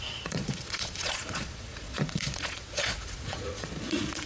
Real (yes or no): no